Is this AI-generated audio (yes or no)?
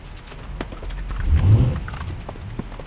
no